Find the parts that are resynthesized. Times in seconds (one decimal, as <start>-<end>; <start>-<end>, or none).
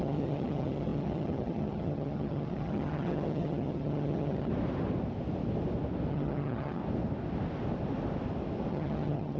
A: 0.0-4.5; 6.1-6.8; 8.7-9.4